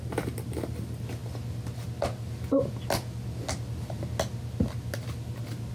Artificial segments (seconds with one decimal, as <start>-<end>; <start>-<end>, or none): none